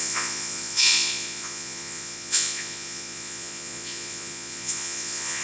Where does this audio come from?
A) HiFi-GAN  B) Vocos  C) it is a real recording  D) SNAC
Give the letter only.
B